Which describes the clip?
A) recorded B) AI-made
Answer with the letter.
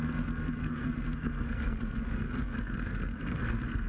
B